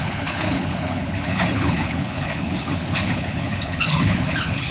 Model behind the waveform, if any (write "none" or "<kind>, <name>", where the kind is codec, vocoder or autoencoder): codec, HILCodec